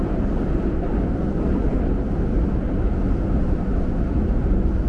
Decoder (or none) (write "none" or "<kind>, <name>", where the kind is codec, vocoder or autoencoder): none